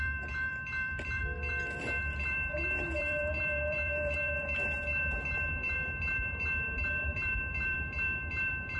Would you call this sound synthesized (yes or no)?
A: yes